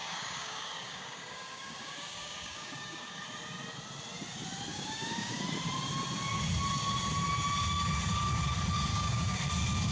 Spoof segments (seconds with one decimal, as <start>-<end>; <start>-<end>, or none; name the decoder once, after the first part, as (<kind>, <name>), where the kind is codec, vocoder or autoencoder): 0.0-3.2 (codec, DAC); 4.7-5.4; 8.9-9.4